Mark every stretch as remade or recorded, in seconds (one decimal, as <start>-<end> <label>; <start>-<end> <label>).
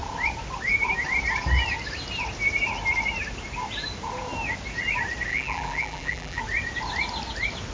0.0-5.3 recorded; 5.3-6.4 remade; 6.4-7.7 recorded